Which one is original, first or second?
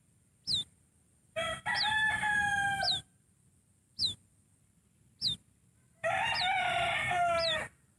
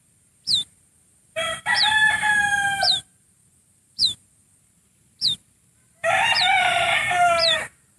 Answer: first